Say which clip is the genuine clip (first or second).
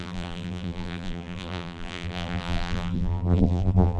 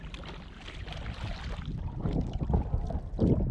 second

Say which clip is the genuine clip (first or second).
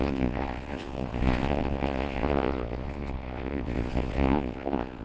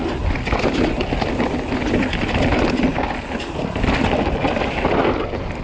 second